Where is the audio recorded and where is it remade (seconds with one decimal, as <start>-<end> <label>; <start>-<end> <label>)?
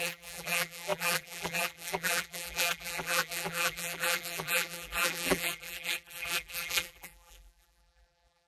0.0-8.5 remade